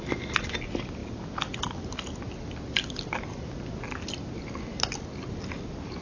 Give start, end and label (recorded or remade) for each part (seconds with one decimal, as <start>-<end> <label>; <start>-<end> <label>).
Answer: 0.0-6.0 recorded